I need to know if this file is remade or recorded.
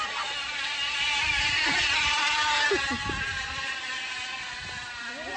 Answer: recorded